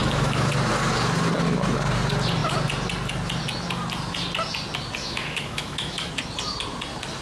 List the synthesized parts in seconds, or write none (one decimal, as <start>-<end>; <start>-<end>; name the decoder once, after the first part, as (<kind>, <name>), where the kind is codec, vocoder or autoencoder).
0.0-0.5 (autoencoder, DAC-VAE); 5.0-6.1